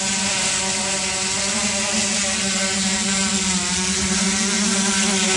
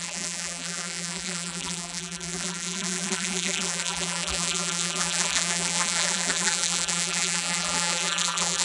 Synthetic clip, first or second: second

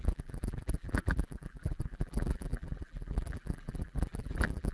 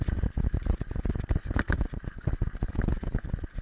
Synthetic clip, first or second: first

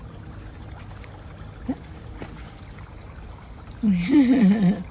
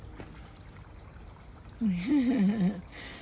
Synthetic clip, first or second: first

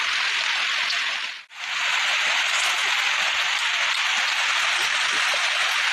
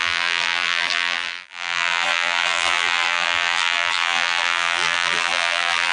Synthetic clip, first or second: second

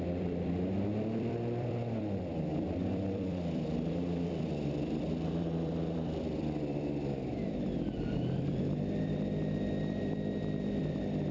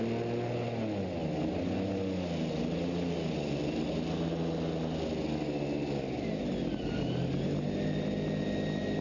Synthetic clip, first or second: first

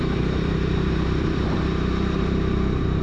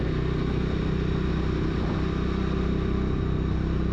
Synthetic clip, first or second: first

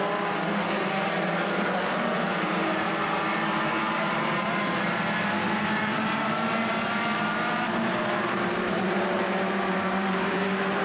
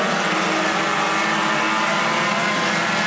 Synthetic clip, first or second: first